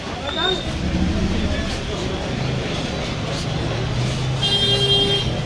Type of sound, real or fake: real